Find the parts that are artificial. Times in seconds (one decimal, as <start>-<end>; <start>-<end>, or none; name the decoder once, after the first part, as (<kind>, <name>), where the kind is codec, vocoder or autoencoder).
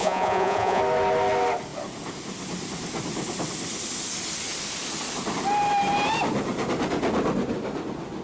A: 0.0-0.8 (vocoder, Vocos)